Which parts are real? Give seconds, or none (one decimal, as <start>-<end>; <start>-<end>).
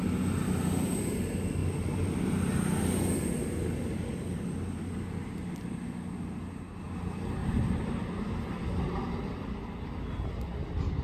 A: 0.0-1.6; 2.2-7.4; 8.0-11.0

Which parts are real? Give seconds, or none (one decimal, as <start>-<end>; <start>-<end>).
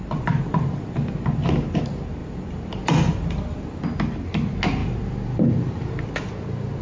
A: 1.1-2.2; 3.8-4.8; 6.1-6.8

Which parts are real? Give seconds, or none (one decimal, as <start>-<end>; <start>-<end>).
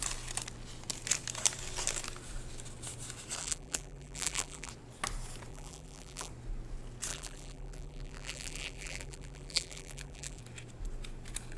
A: 0.0-3.4; 4.7-5.5; 6.3-7.1; 10.4-11.6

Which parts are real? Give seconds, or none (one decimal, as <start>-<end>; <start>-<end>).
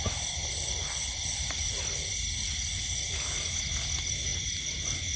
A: 0.0-0.4; 2.8-4.3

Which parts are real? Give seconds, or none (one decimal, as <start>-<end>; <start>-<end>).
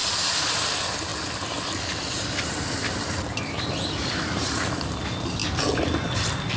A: 0.0-0.7; 1.1-2.1; 5.4-6.6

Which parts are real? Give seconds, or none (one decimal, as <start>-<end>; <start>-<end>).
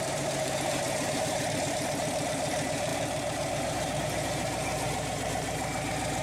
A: none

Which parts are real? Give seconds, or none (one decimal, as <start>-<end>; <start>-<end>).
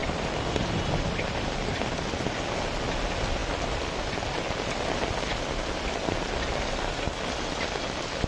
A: 2.6-8.3